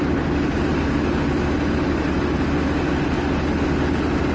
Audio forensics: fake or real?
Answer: real